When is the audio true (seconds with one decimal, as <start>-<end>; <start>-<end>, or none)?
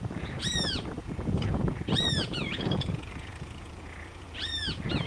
none